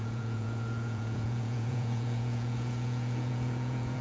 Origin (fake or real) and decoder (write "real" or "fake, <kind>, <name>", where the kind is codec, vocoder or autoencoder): fake, vocoder, Vocos